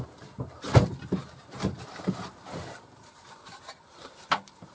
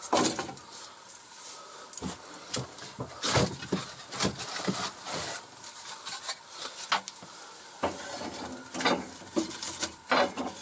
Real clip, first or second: second